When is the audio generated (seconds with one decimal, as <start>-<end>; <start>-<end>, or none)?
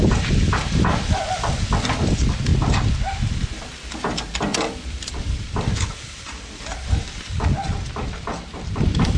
0.0-9.2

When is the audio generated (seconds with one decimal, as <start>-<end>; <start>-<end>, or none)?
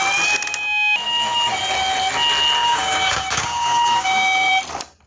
2.6-4.5